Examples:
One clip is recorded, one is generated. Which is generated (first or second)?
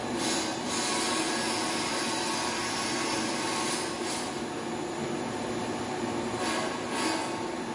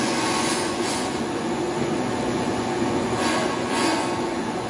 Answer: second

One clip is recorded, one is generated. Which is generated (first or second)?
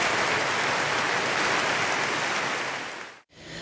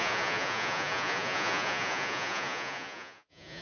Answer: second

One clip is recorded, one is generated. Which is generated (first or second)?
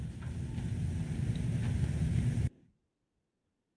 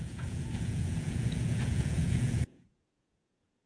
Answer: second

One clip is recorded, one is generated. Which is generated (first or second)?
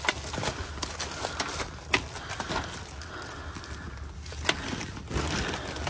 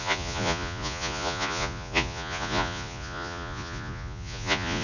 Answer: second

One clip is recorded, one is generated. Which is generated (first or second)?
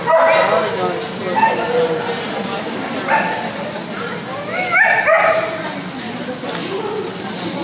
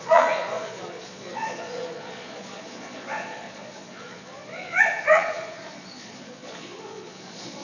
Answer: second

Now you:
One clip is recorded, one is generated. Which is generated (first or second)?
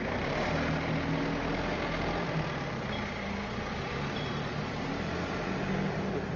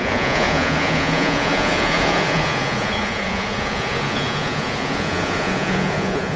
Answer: second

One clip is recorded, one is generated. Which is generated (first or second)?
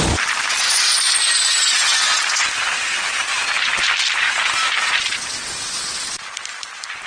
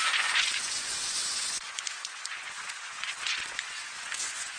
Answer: second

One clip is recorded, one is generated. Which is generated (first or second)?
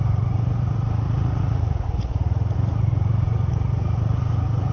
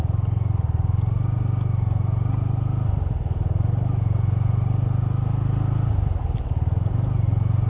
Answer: first